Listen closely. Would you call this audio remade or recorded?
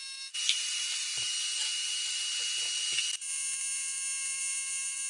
recorded